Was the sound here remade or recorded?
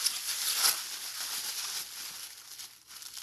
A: recorded